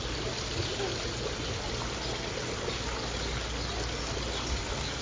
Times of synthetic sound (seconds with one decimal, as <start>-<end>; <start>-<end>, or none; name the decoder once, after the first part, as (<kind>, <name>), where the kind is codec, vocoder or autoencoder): none